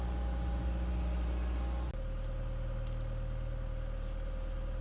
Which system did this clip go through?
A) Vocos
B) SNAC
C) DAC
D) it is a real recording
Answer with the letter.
D